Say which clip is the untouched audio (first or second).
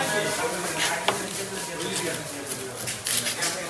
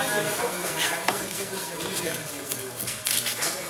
first